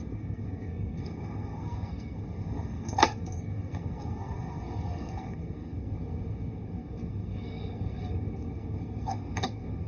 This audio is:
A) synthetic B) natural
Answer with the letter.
A